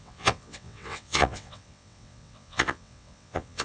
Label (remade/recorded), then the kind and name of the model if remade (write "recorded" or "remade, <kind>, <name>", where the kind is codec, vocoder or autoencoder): remade, vocoder, WaveNeXt